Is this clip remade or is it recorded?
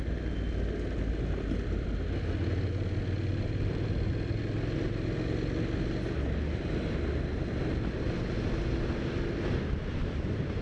recorded